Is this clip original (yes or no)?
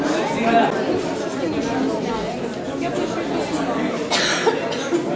yes